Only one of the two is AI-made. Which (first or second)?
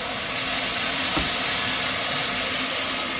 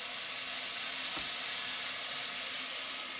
first